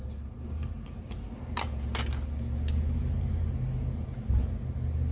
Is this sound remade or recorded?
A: recorded